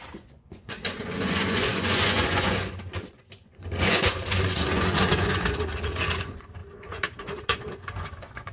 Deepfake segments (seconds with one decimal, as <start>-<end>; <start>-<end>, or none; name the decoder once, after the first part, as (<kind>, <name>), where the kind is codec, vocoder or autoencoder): 0.0-8.5 (vocoder, Vocos)